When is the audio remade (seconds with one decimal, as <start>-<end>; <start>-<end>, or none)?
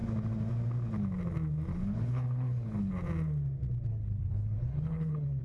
1.7-2.9; 3.9-5.4